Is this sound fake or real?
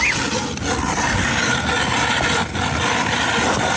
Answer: real